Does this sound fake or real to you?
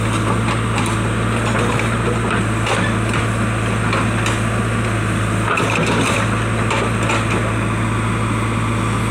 real